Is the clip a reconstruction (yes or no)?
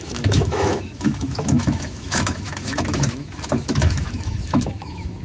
yes